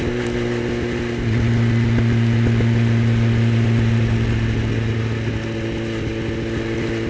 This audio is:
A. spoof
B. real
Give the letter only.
B